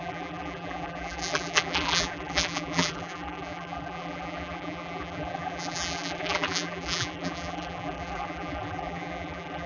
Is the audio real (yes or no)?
no